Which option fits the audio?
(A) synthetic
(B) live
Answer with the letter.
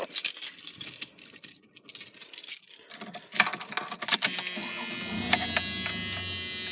B